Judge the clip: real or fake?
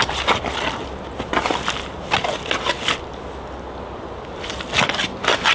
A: real